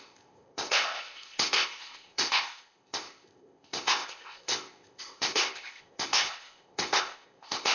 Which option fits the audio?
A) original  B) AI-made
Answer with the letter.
B